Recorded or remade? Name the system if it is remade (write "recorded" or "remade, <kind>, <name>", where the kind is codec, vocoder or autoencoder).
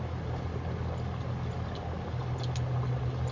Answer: recorded